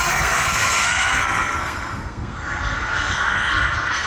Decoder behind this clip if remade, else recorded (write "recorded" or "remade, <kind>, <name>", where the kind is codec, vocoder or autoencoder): remade, codec, SNAC